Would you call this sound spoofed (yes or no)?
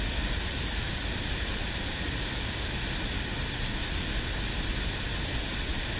no